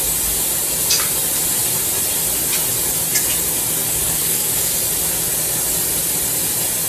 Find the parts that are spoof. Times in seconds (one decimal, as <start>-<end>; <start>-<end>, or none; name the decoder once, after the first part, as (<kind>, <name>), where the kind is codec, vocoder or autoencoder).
3.8-4.7 (codec, DAC)